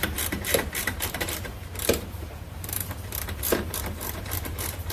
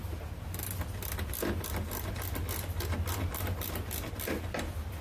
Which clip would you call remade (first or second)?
first